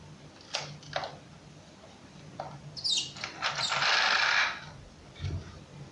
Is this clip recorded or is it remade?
recorded